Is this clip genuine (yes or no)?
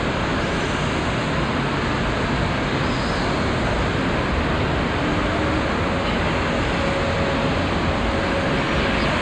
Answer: yes